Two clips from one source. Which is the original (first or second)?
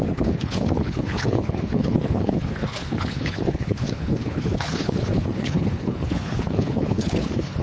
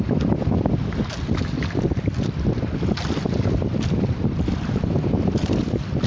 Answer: second